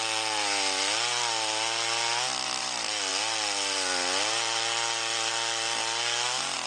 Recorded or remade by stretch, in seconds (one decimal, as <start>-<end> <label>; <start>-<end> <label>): 0.0-6.7 recorded